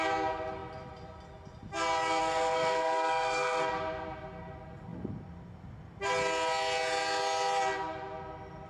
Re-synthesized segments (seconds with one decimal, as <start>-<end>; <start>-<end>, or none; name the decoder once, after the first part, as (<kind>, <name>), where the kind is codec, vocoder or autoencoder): 2.2-3.7 (codec, SNAC)